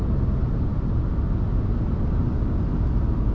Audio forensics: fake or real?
real